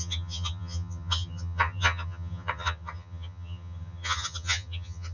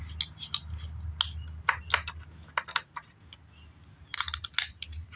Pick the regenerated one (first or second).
first